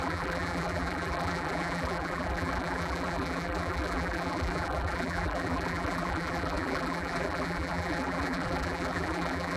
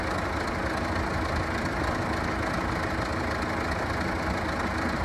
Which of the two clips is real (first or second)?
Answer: second